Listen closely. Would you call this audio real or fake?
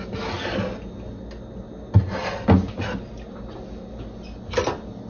real